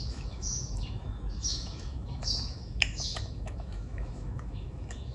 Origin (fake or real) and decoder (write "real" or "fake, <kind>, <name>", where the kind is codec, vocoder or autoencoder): fake, autoencoder, DAC-VAE